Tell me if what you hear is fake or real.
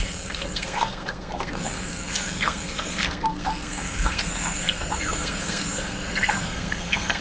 fake